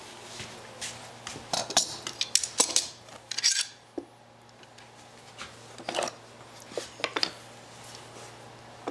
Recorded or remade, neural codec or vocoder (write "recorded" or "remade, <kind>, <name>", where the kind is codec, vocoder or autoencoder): recorded